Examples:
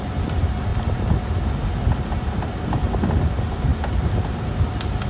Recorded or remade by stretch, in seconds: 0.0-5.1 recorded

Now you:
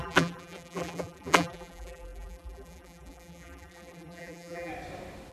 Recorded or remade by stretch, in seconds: 0.0-4.7 remade; 4.7-5.3 recorded

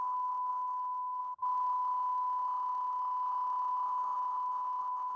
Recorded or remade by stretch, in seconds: 0.0-5.2 remade

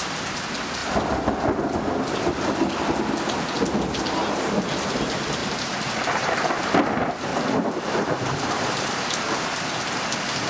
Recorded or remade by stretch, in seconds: 0.0-5.4 recorded; 5.4-6.5 remade; 6.5-7.3 recorded; 7.3-9.0 remade; 9.0-10.5 recorded

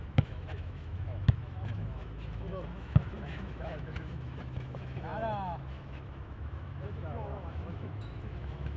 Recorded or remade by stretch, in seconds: 0.0-8.8 remade